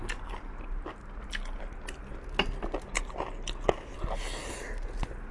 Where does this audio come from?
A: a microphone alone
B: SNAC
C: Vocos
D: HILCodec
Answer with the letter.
A